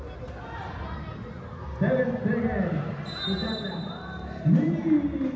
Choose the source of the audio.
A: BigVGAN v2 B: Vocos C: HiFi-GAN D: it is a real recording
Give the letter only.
D